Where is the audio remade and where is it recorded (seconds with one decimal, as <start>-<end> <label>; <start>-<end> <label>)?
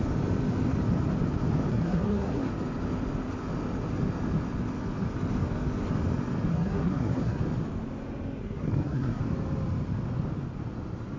0.0-1.7 recorded; 1.7-2.5 remade; 2.5-6.5 recorded; 6.5-7.4 remade; 7.4-8.4 recorded; 8.4-9.2 remade; 9.2-11.2 recorded